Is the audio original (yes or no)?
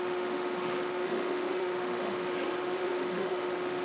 no